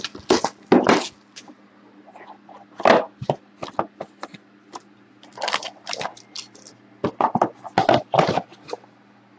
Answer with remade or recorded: recorded